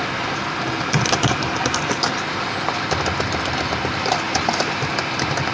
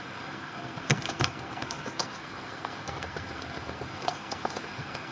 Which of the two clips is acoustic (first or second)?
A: first